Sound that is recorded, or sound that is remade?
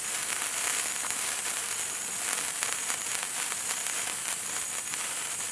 recorded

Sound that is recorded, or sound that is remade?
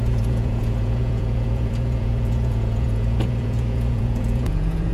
remade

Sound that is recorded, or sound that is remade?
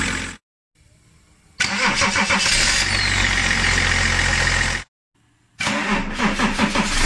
recorded